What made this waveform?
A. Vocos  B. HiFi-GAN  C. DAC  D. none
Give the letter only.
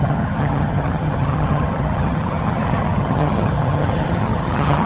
B